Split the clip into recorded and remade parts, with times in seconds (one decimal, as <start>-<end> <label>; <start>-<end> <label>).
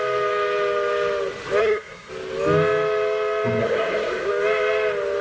0.0-1.6 recorded; 1.6-2.1 remade; 2.1-3.6 recorded; 3.6-4.3 remade; 4.3-5.2 recorded